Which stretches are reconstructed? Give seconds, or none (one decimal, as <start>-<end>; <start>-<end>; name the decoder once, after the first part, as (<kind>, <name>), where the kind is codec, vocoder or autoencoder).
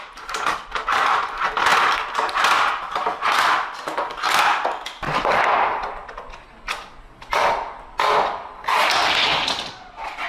none